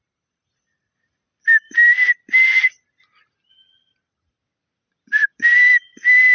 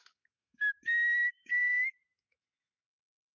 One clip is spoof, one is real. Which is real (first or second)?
first